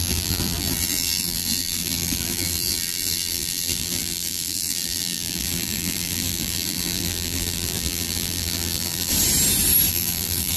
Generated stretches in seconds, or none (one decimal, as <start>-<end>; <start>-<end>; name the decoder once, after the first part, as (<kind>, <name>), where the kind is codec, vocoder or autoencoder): 0.0-9.1 (vocoder, BigVGAN v2); 9.9-10.6